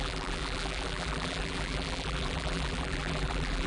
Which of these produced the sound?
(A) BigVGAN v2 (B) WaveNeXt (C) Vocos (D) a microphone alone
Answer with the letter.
A